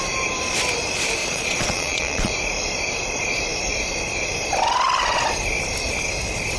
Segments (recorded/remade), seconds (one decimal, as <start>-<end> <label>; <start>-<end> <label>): 0.0-1.2 recorded; 1.2-2.3 remade; 2.3-6.6 recorded